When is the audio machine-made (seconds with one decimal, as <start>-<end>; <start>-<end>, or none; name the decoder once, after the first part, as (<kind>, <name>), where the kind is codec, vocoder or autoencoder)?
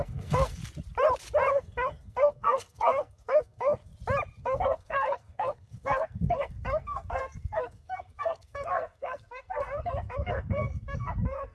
0.0-0.6 (codec, SNAC); 1.5-3.9; 4.4-11.5